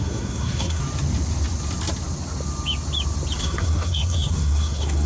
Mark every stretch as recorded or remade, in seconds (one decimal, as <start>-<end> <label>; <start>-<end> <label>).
0.0-0.8 remade; 0.8-3.4 recorded; 3.4-5.1 remade